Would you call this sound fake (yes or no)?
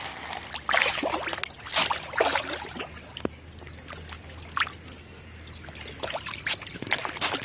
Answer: no